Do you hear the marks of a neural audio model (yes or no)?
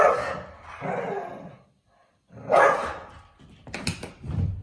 no